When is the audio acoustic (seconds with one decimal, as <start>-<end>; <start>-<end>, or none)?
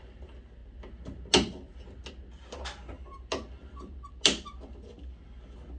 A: 0.0-5.8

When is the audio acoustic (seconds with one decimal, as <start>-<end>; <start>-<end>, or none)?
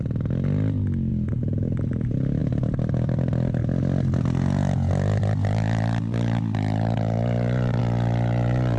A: 0.0-8.8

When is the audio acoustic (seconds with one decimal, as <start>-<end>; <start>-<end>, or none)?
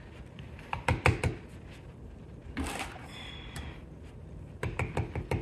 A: 0.0-5.4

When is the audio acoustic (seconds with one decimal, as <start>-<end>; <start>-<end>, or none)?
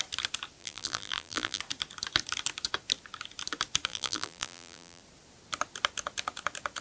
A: 0.0-0.6; 1.6-3.9; 5.0-6.8